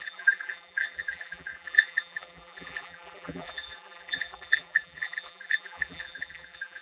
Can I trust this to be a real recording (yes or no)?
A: no